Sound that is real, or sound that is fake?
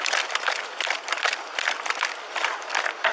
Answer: real